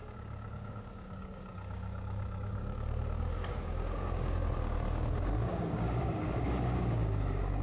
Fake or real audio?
fake